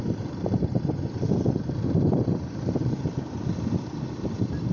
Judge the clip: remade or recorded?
remade